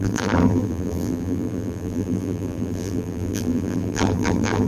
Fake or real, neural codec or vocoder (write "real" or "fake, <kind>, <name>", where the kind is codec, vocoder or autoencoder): fake, vocoder, BigVGAN v2